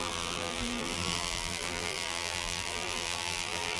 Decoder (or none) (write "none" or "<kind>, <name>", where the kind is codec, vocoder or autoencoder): vocoder, BigVGAN v2